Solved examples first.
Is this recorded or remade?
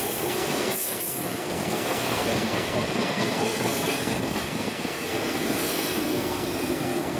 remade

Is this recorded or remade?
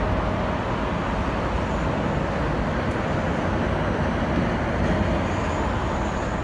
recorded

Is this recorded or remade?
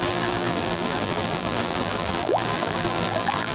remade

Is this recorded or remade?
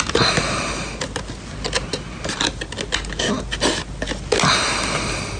recorded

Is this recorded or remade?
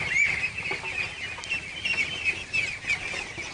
recorded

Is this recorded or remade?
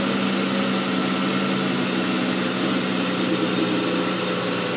recorded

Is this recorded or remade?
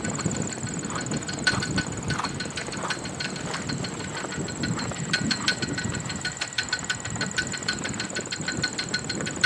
recorded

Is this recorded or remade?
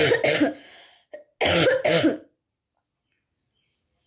recorded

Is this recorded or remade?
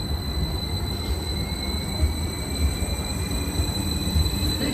recorded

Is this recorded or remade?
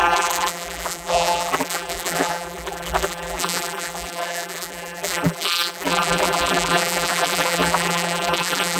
remade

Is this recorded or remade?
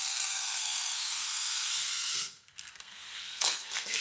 remade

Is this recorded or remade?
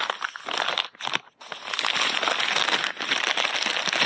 recorded